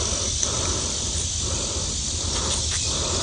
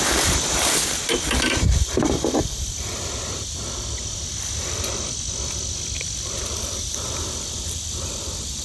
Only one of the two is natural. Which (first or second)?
first